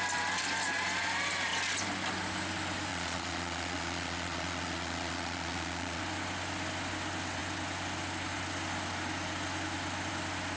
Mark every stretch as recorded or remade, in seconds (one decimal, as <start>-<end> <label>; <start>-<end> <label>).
0.0-2.9 recorded; 2.9-6.0 remade; 6.0-10.6 recorded

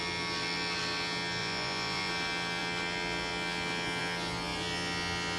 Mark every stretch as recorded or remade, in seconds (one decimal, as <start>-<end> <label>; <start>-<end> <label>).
0.0-1.4 recorded; 1.4-2.1 remade; 2.1-5.4 recorded